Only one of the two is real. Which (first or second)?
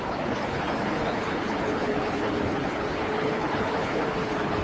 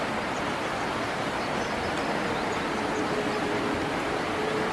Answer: second